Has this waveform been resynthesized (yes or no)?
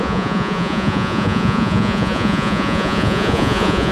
yes